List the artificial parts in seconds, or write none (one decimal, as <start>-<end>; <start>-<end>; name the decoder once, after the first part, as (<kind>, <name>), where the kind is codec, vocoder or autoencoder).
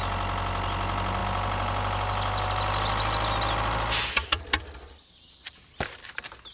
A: none